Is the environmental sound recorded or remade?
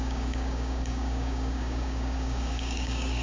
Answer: remade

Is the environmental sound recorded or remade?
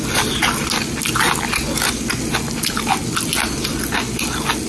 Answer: recorded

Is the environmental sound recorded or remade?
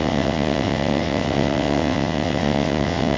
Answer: remade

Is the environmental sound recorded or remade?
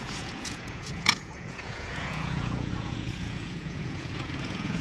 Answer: remade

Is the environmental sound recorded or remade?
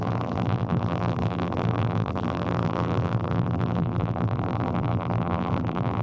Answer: remade